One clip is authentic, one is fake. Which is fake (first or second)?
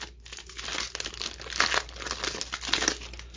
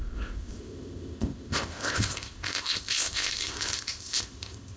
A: second